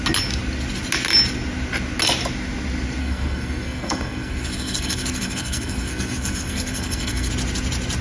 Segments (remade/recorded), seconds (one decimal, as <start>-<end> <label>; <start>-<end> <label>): 0.0-3.0 recorded; 3.0-7.3 remade; 7.3-8.0 recorded